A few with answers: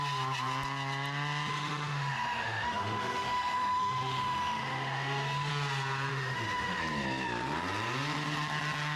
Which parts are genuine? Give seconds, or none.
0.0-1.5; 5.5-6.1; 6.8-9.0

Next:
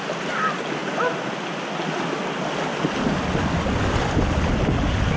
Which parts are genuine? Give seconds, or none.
0.0-5.2

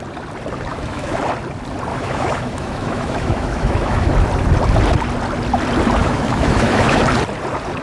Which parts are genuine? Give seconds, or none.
0.0-0.7; 1.2-1.9; 4.1-6.0; 7.0-7.8

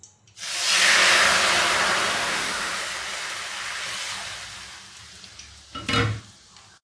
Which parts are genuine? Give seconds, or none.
0.0-2.1; 2.7-6.8

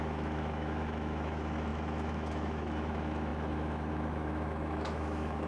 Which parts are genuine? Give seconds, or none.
none

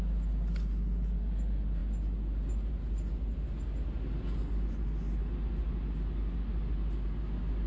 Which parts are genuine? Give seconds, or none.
0.0-7.7